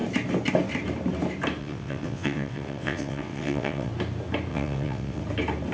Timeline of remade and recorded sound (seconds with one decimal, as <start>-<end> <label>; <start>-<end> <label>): 0.0-1.6 recorded; 1.6-3.9 remade; 3.9-4.5 recorded; 4.5-5.2 remade; 5.2-5.7 recorded